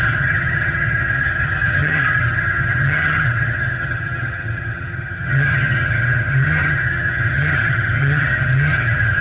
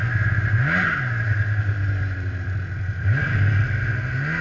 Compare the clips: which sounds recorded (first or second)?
second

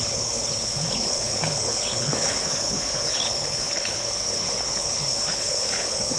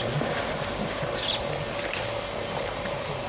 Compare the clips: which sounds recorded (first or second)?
second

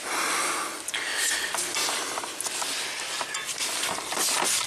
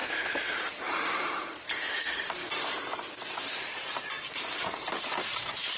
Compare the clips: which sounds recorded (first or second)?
first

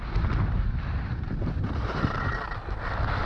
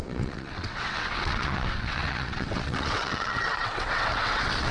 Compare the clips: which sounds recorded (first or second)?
first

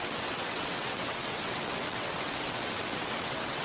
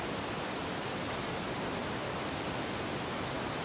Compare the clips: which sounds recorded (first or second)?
second